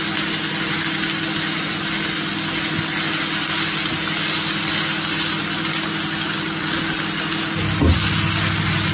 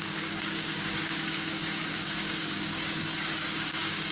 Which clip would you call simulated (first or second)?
second